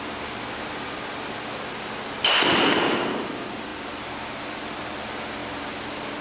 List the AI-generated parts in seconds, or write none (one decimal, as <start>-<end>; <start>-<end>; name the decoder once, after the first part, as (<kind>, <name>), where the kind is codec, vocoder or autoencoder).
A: none